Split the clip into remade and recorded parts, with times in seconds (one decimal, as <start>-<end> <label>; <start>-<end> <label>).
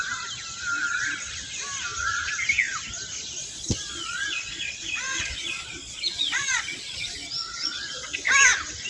0.0-3.4 recorded; 3.4-8.3 remade; 8.3-8.9 recorded